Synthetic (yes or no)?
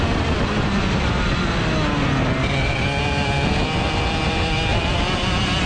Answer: no